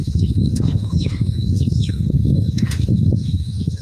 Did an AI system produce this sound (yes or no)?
yes